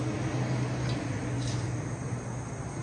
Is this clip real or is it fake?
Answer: real